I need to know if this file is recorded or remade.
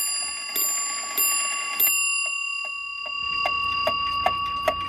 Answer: recorded